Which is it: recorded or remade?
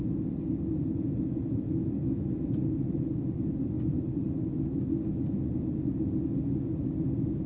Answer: recorded